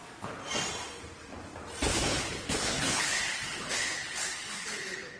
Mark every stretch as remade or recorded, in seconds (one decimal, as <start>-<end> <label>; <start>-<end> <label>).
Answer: 0.0-1.9 recorded; 1.9-5.2 remade